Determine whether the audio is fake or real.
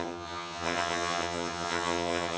fake